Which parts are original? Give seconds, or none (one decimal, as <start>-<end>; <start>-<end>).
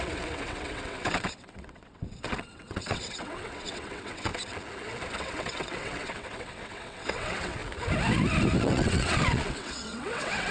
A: 4.3-5.2; 7.6-8.6